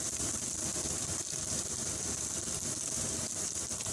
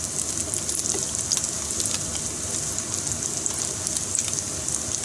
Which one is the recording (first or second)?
second